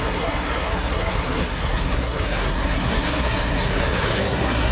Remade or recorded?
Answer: remade